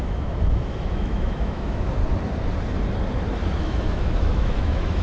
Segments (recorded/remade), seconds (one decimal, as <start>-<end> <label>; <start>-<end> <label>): 0.0-2.0 remade; 2.0-3.6 recorded; 3.6-5.0 remade